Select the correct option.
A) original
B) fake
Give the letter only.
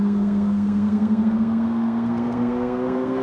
B